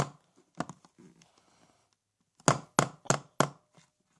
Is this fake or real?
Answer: real